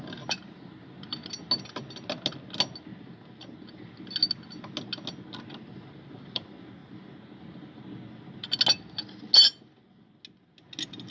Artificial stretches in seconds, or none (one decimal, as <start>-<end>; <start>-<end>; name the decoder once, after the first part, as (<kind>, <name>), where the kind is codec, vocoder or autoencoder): none